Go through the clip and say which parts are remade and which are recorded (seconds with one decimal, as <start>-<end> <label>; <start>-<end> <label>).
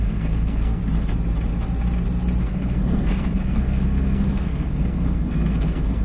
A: 0.0-0.8 remade; 0.8-2.4 recorded; 2.4-6.0 remade